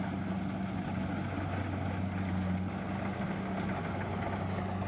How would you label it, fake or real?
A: real